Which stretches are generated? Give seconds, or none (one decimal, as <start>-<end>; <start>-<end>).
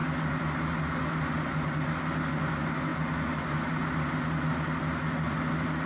none